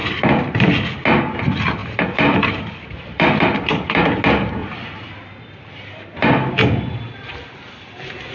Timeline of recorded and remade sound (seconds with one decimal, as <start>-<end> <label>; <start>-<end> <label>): 0.0-0.7 remade; 0.7-1.8 recorded; 1.8-4.0 remade; 4.0-4.6 recorded; 4.6-6.5 remade; 6.5-8.3 recorded